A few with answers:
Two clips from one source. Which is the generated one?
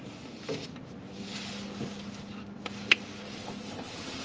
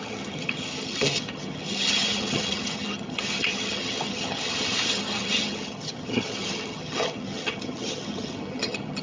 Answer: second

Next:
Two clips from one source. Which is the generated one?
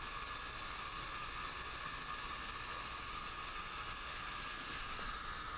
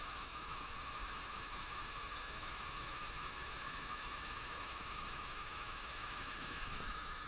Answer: second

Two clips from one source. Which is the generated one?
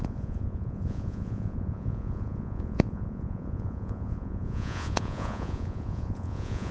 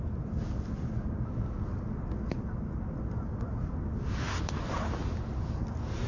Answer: first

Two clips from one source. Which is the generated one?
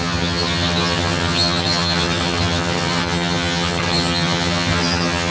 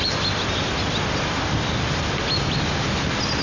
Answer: first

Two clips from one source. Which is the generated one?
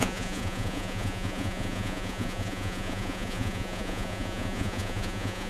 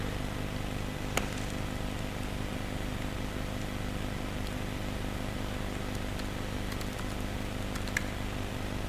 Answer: first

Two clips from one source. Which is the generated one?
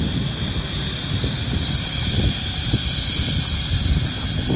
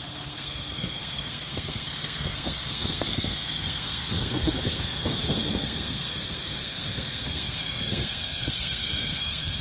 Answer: second